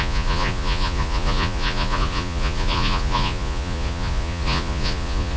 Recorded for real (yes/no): no